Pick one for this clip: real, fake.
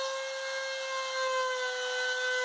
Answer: real